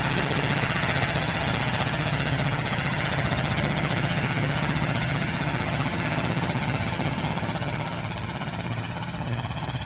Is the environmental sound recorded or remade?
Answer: remade